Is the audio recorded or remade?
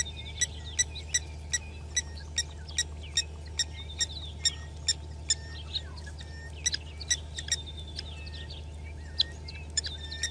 recorded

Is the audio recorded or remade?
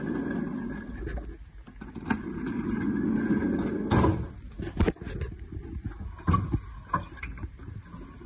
recorded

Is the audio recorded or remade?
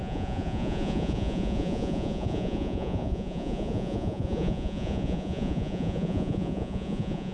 remade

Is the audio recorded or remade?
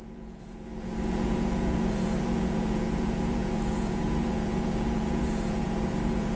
remade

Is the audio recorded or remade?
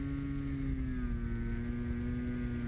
recorded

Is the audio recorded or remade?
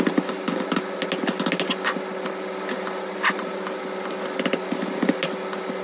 recorded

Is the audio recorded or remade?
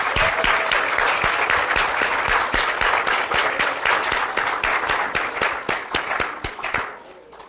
recorded